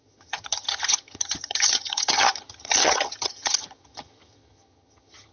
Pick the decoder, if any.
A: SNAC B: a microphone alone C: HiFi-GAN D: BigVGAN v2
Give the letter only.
C